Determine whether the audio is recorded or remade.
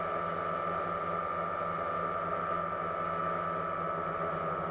recorded